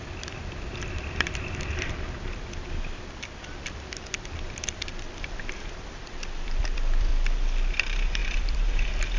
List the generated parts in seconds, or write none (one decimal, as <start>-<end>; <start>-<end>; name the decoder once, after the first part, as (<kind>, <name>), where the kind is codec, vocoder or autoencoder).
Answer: 0.0-7.1 (vocoder, BigVGAN v2); 7.7-9.2